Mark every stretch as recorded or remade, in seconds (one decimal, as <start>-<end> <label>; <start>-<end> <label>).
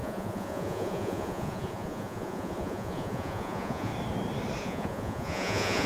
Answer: 0.0-3.9 remade; 3.9-4.6 recorded; 4.6-5.9 remade